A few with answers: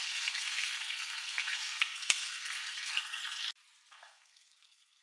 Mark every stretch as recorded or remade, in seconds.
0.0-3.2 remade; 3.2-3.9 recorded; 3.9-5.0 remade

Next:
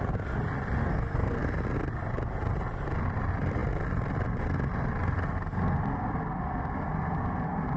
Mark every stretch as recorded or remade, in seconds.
0.0-0.8 recorded; 0.8-1.4 remade; 1.4-7.8 recorded

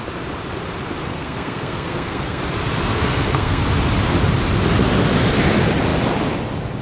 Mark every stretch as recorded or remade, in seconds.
0.0-1.1 recorded; 1.1-2.4 remade; 2.4-2.9 recorded; 2.9-3.6 remade; 3.6-6.8 recorded